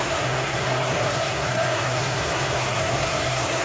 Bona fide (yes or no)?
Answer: no